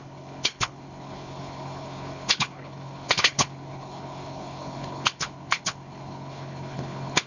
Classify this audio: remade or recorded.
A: remade